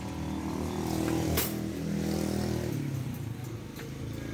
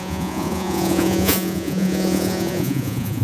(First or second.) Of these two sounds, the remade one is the second